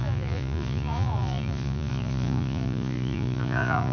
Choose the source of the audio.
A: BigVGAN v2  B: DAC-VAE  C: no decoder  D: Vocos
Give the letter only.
D